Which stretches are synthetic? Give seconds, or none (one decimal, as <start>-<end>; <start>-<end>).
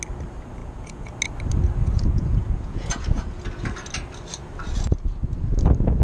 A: 0.6-1.1; 1.8-3.4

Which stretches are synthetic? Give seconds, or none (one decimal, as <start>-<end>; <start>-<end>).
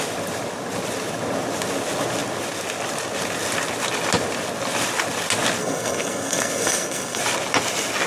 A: 5.6-7.2